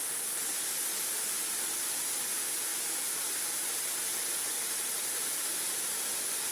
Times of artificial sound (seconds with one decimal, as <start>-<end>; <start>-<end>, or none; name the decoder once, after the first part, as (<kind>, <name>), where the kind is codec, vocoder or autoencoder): 2.7-5.8 (vocoder, BigVGAN v2)